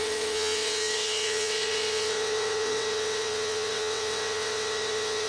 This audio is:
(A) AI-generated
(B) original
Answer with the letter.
A